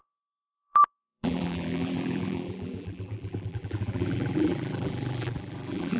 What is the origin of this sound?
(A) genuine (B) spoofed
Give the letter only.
B